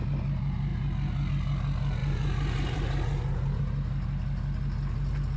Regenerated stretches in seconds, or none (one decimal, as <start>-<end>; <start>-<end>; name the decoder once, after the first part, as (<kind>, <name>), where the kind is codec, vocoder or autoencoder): 2.0-3.6 (vocoder, BigVGAN v2)